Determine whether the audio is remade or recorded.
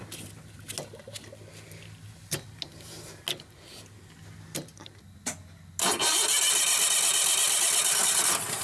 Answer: recorded